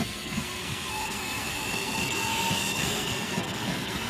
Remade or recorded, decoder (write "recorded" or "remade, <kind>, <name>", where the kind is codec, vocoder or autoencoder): remade, codec, SNAC